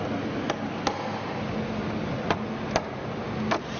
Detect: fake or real real